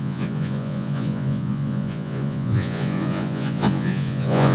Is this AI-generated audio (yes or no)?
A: yes